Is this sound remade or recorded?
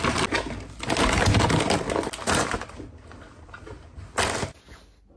recorded